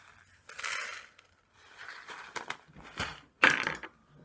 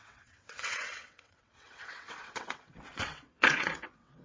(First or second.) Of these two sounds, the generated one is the second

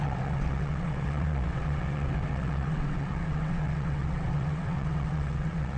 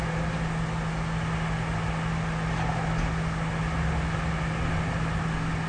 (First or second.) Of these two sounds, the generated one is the first